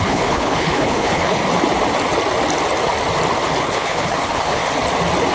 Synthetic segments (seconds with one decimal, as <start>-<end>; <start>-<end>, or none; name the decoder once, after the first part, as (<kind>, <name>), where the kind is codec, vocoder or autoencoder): 0.0-1.4 (codec, HILCodec); 3.6-4.6